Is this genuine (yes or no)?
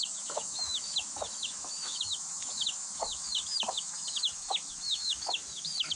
no